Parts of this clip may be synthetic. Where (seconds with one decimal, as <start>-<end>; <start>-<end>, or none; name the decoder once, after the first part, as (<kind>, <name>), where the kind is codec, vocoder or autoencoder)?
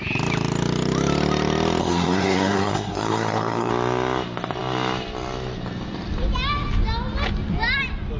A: 1.8-3.7 (codec, SNAC)